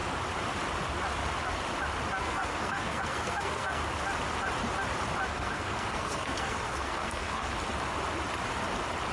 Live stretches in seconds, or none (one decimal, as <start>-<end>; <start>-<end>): 0.0-2.2; 3.8-5.3; 7.5-9.1